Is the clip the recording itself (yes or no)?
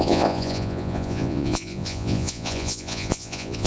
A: no